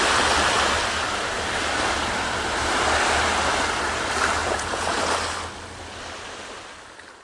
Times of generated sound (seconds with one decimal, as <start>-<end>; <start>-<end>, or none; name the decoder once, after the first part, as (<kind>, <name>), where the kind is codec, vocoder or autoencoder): 4.4-5.1 (vocoder, Vocos)

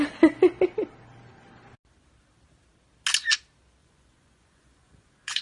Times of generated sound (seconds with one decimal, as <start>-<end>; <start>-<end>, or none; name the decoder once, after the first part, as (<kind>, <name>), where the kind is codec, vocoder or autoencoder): 3.8-5.4 (vocoder, Vocos)

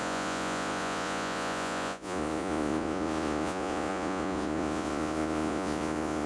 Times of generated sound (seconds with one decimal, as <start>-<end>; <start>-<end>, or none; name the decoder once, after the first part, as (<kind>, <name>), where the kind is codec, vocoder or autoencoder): 0.0-6.3 (vocoder, Vocos)

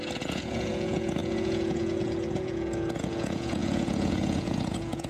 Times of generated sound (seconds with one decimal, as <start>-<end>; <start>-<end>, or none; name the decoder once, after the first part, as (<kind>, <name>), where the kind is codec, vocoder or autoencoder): 0.0-5.1 (vocoder, Vocos)

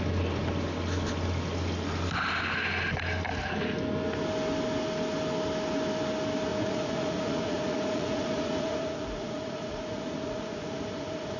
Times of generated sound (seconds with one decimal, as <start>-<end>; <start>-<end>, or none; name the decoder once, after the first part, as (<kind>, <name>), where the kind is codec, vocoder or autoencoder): 6.5-11.4 (vocoder, Vocos)

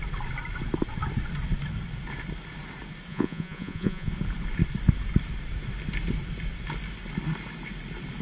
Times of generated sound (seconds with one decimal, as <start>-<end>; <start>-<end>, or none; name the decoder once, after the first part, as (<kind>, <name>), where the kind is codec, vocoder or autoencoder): 3.1-4.1 (vocoder, Vocos)

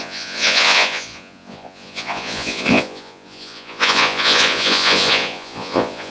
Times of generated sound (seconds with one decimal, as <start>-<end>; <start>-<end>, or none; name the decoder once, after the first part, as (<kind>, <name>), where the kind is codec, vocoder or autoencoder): 0.0-6.1 (vocoder, Vocos)